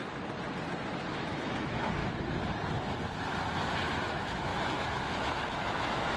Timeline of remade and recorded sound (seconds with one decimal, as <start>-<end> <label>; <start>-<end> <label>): 0.0-1.2 recorded; 1.2-2.0 remade; 2.0-4.1 recorded; 4.1-6.2 remade